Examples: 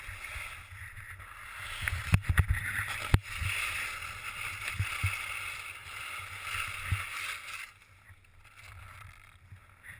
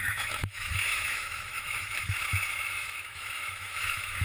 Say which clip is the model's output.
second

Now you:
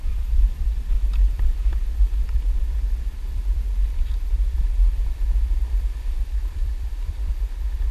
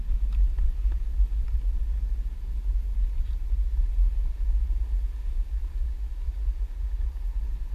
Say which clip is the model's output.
first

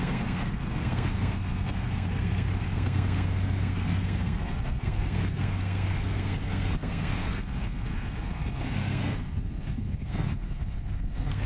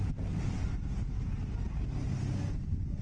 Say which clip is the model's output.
first